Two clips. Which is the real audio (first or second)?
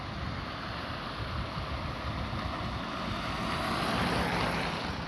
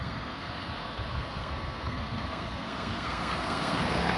first